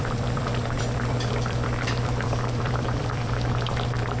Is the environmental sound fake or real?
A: fake